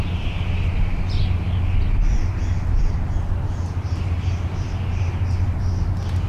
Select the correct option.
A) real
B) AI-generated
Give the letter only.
A